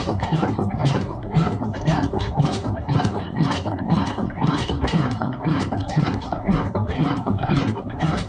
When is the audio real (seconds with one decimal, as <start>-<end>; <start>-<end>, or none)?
none